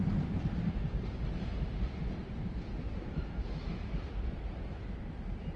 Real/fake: real